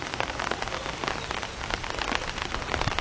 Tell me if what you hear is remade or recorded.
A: recorded